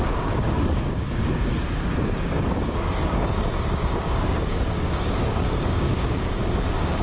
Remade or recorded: remade